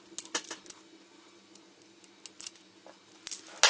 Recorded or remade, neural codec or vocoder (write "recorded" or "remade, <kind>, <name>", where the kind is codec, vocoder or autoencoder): recorded